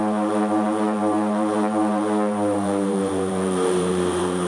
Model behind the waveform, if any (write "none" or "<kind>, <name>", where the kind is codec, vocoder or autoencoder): vocoder, BigVGAN v2